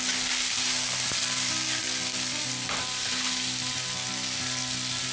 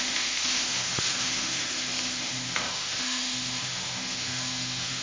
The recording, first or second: first